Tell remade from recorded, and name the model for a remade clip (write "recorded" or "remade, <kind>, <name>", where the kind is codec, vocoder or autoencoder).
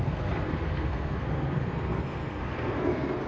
remade, codec, SNAC